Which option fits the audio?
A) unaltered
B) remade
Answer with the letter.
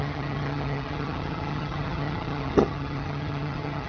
B